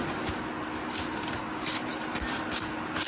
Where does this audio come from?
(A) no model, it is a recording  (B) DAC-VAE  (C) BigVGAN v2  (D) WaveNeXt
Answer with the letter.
A